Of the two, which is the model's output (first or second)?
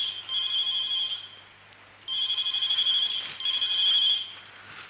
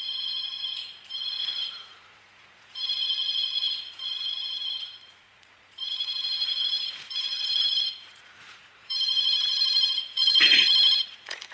second